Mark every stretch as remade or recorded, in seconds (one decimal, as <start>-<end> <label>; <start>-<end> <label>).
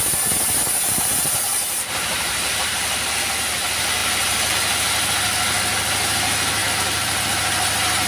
0.0-1.5 recorded; 1.5-2.8 remade; 2.8-6.6 recorded; 6.6-7.2 remade; 7.2-8.1 recorded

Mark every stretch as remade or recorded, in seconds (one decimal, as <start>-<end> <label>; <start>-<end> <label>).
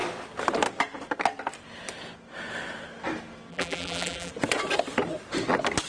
0.0-3.5 recorded; 3.5-4.3 remade; 4.3-5.9 recorded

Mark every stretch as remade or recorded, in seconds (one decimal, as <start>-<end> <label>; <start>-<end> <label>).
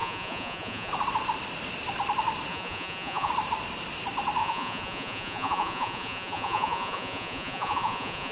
0.0-0.9 remade; 0.9-2.5 recorded; 2.5-3.3 remade; 3.3-4.4 recorded; 4.4-8.3 remade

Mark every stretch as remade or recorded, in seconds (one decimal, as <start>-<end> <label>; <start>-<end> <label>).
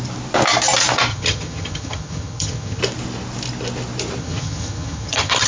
0.0-1.1 recorded; 1.1-2.8 remade; 2.8-4.2 recorded; 4.2-5.5 remade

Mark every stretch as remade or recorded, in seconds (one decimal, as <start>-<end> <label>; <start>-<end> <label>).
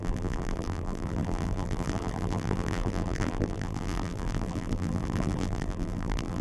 0.0-6.4 remade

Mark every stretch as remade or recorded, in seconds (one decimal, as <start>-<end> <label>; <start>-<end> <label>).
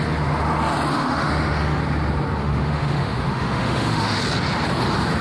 0.0-0.9 recorded; 0.9-1.8 remade; 1.8-2.4 recorded; 2.4-4.2 remade; 4.2-5.2 recorded